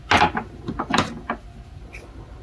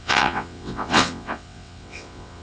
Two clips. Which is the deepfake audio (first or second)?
second